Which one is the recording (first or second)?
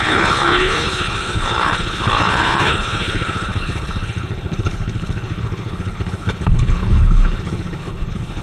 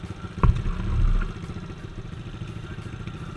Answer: second